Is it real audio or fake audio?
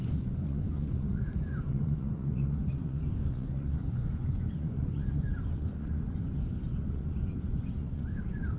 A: fake